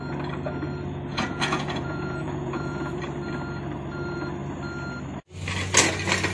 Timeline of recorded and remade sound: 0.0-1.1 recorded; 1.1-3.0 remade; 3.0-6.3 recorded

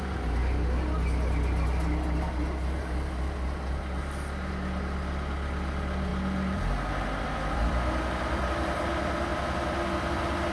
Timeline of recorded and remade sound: 0.0-6.1 recorded; 6.1-8.8 remade; 8.8-10.5 recorded

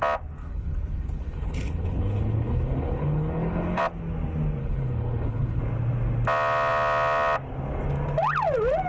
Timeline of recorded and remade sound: 0.0-0.4 recorded; 0.4-3.8 remade; 3.8-4.6 recorded; 4.6-5.6 remade; 5.6-8.9 recorded

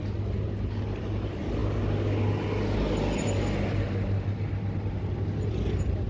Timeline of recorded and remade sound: 0.0-6.1 recorded

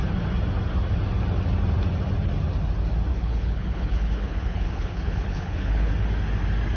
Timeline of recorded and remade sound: 0.0-3.1 recorded; 3.1-5.9 remade; 5.9-6.8 recorded

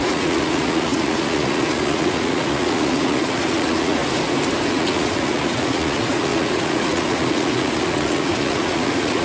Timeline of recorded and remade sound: 0.0-4.0 remade; 4.0-4.7 recorded; 4.7-9.2 remade

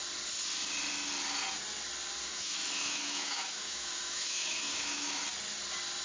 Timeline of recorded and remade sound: 0.0-2.3 recorded; 2.3-5.2 remade; 5.2-6.0 recorded

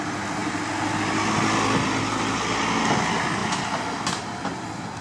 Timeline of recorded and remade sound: 0.0-5.0 recorded